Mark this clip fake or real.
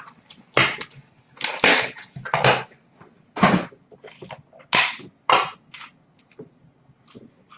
real